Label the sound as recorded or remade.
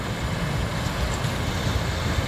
recorded